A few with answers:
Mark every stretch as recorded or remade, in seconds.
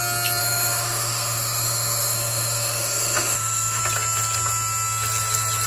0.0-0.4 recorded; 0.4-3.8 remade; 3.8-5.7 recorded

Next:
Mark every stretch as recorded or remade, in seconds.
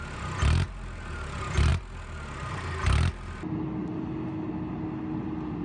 0.0-5.6 recorded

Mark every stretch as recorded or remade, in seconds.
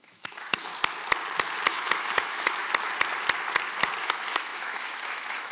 0.0-0.7 remade; 0.7-1.7 recorded; 1.7-2.6 remade; 2.6-4.0 recorded; 4.0-5.5 remade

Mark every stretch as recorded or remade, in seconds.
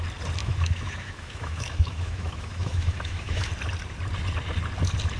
0.0-0.4 recorded; 0.4-3.5 remade; 3.5-5.2 recorded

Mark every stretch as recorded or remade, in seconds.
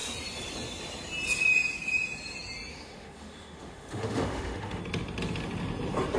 0.0-2.7 recorded; 2.7-4.8 remade; 4.8-6.2 recorded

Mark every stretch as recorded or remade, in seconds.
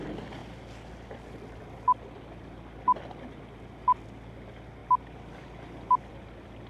0.0-6.7 recorded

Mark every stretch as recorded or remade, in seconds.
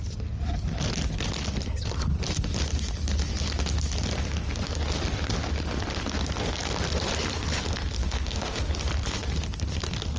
0.0-8.0 recorded; 8.0-8.6 remade; 8.6-10.2 recorded